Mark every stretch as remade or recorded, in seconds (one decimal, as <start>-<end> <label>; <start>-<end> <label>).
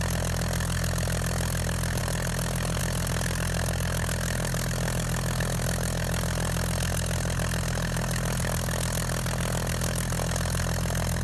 0.0-11.2 recorded